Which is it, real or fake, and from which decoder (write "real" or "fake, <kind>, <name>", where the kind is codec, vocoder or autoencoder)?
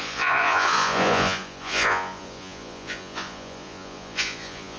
fake, vocoder, Vocos